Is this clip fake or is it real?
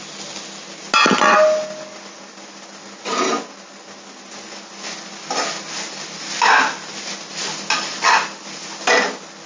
real